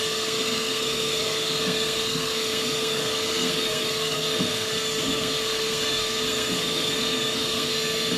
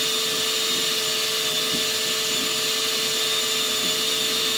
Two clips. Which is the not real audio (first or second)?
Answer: first